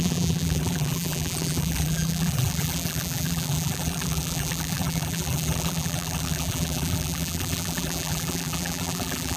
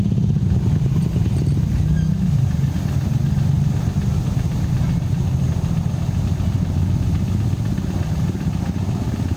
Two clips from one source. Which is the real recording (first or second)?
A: second